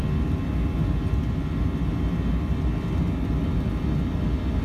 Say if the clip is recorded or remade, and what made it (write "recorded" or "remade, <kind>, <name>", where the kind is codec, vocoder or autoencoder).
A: recorded